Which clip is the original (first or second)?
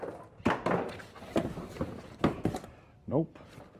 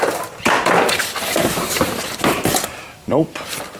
first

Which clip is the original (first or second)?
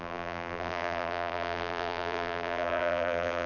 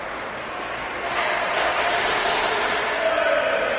second